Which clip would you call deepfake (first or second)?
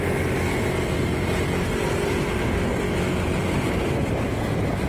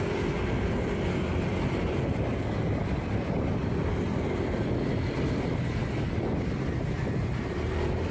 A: second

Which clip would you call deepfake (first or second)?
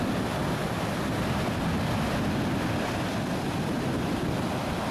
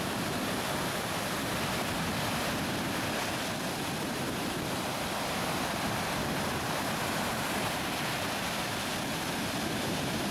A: second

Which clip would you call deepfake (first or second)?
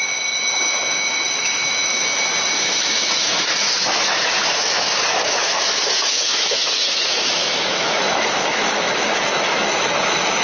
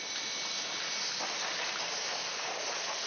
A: first